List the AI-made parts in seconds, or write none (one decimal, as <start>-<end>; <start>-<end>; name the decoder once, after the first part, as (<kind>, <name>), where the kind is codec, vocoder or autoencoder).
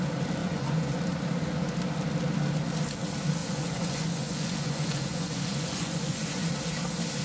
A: 0.4-1.0 (vocoder, Vocos); 3.4-6.5